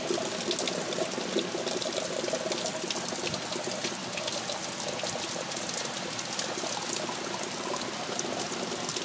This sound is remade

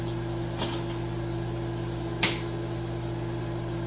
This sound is recorded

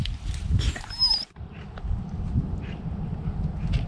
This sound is recorded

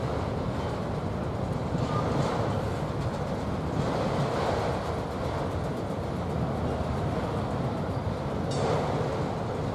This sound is recorded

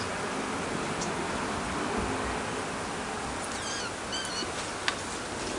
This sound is recorded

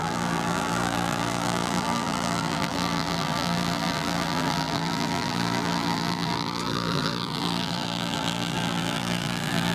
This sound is remade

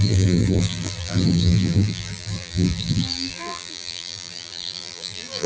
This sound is remade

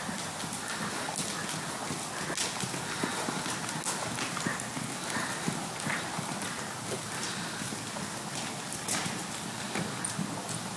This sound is recorded